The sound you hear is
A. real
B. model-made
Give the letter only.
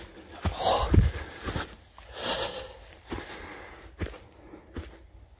A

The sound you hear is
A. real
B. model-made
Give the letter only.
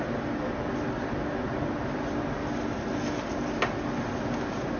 A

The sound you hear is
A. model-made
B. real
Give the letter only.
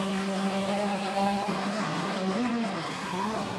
A